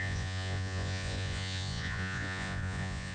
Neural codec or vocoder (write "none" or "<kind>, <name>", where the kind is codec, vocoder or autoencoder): vocoder, Vocos